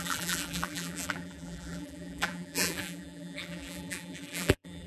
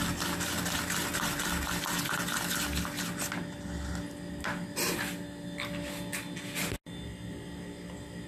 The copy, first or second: first